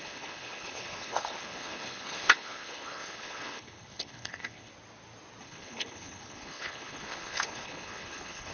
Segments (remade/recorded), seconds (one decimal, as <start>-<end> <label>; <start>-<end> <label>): 0.0-4.7 remade; 4.7-5.4 recorded; 5.4-8.5 remade